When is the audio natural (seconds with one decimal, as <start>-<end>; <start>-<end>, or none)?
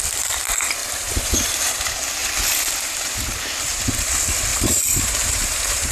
0.0-0.8; 1.8-4.5